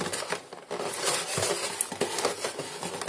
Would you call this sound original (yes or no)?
yes